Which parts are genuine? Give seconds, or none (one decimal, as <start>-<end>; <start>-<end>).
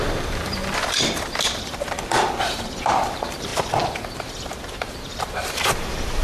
0.6-1.5; 3.5-4.2